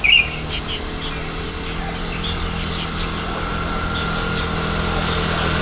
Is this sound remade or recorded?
recorded